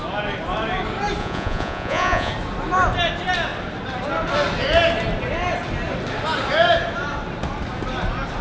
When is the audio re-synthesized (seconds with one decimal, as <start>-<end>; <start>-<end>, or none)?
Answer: 1.2-2.3